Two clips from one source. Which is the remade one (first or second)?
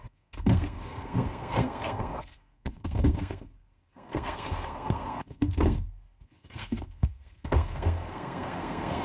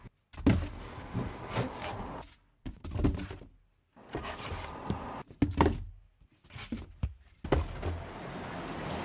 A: first